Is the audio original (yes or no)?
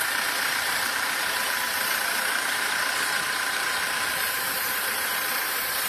no